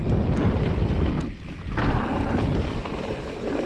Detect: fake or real real